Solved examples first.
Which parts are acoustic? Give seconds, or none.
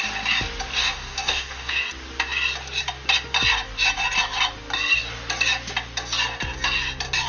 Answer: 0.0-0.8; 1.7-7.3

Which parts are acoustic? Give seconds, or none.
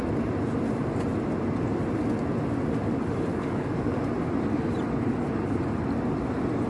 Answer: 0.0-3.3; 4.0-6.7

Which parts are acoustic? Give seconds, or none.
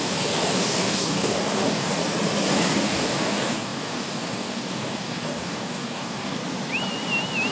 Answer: 2.0-2.5; 6.4-7.5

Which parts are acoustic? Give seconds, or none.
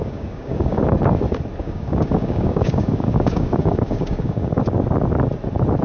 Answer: 0.8-1.6; 4.6-5.8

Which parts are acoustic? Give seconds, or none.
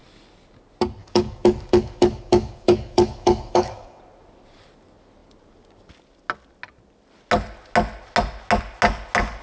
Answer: 0.0-1.0; 4.0-9.4